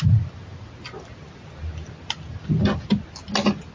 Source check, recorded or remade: recorded